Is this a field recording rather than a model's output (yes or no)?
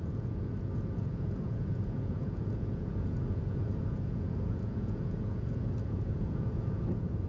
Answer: no